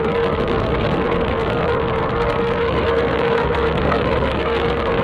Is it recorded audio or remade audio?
remade